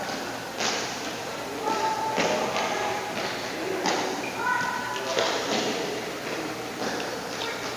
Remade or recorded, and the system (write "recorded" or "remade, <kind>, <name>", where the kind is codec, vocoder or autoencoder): recorded